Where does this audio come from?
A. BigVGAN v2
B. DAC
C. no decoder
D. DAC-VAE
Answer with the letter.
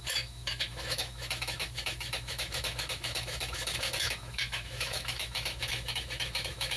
D